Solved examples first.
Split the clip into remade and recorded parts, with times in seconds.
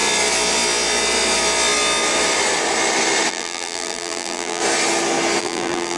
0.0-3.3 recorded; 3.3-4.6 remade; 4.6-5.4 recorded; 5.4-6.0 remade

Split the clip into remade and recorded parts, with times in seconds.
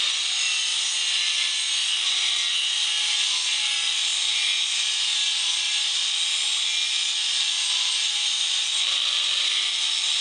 0.0-10.2 recorded